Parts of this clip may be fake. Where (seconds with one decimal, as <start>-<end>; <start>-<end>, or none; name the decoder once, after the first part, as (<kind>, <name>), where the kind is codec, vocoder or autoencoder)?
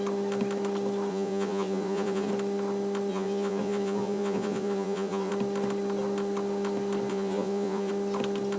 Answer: 1.1-2.3 (vocoder, Vocos); 3.1-5.3; 7.1-7.9